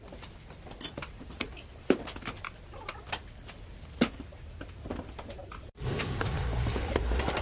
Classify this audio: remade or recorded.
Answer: recorded